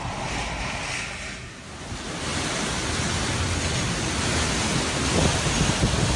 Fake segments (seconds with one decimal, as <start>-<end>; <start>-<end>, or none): none